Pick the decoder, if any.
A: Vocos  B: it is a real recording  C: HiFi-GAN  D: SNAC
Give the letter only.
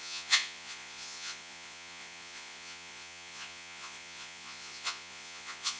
A